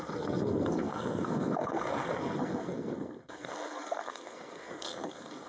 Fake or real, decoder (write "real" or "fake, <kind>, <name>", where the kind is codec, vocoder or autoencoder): fake, codec, SNAC